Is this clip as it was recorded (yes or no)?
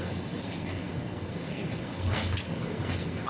no